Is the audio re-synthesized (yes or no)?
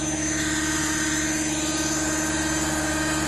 no